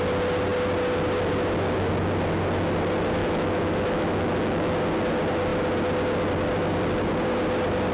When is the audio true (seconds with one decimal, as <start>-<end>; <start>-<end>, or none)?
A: 0.0-3.2; 4.7-7.9